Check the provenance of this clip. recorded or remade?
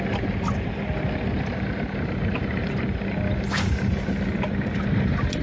recorded